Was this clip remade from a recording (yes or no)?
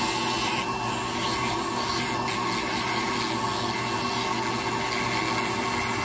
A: no